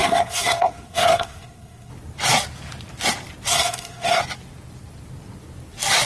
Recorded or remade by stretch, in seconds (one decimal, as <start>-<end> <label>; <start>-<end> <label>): 0.0-1.9 remade; 1.9-3.5 recorded; 3.5-4.2 remade; 4.2-6.1 recorded